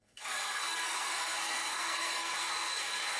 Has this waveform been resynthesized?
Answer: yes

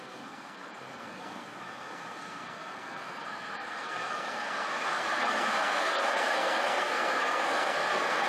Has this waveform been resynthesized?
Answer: yes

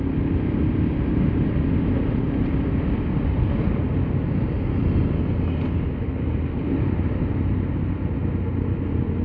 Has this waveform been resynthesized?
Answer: no